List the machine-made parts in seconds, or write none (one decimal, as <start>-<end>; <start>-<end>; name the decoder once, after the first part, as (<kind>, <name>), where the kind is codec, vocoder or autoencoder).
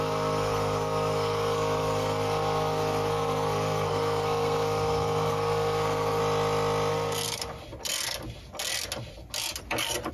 0.0-6.2 (codec, SNAC); 6.9-7.4